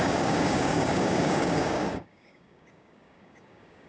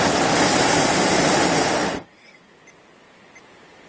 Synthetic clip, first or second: first